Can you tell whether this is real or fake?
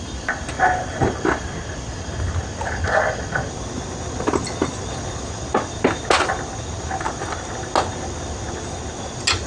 real